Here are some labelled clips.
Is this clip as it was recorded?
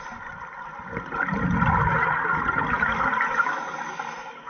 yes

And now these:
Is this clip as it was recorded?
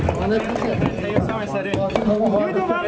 yes